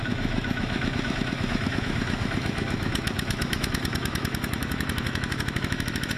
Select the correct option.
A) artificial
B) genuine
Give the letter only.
A